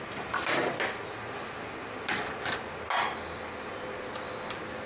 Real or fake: real